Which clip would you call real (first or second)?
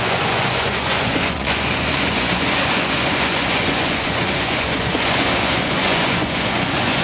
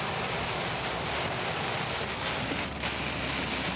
second